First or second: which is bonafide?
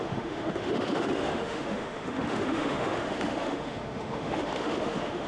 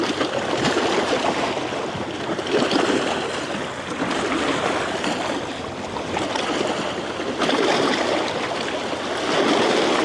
second